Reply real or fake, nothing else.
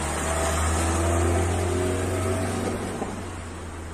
real